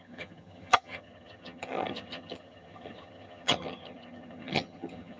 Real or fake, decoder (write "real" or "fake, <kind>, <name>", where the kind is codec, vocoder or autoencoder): fake, vocoder, HiFi-GAN